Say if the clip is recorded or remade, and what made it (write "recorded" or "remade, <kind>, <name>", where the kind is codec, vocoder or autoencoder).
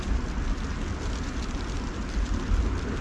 recorded